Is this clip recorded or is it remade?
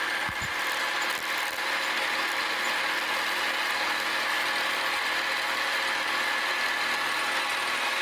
recorded